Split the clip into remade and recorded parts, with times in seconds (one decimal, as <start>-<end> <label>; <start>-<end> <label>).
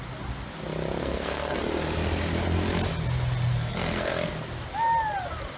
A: 0.0-1.0 recorded; 1.0-1.6 remade; 1.6-3.5 recorded; 3.5-4.1 remade; 4.1-5.6 recorded